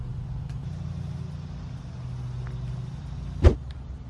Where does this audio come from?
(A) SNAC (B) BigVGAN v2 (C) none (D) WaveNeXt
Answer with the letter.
C